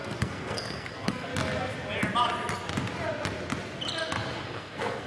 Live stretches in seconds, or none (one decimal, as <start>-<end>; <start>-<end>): 1.3-4.4